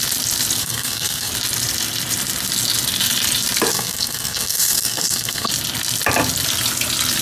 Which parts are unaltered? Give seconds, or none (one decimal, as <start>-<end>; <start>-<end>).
0.0-0.6; 1.3-3.7; 5.5-7.2